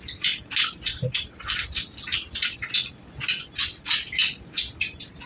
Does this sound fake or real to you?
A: real